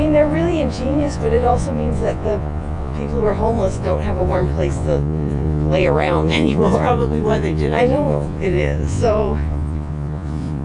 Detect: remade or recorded remade